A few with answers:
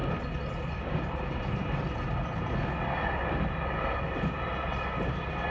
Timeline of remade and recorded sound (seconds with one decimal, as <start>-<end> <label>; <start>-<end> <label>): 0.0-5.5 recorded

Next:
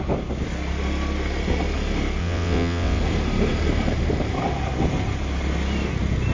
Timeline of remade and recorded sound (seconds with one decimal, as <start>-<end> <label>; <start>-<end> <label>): 0.0-2.2 recorded; 2.2-3.0 remade; 3.0-6.3 recorded

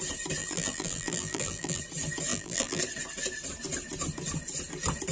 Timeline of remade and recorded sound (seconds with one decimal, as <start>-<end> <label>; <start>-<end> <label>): 0.0-0.4 recorded; 0.4-1.8 remade; 1.8-2.3 recorded; 2.3-2.8 remade; 2.8-5.1 recorded